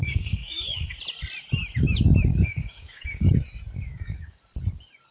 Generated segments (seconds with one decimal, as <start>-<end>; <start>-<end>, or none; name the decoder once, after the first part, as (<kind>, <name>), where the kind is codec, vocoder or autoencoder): 0.0-0.9 (codec, DAC); 2.3-3.3; 3.9-4.4